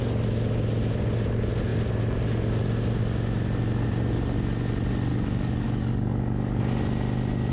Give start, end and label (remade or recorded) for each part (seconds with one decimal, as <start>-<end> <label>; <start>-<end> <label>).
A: 0.0-5.1 recorded; 5.1-6.6 remade; 6.6-7.5 recorded